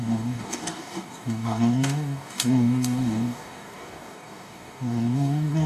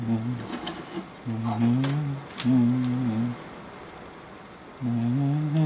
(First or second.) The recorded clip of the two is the second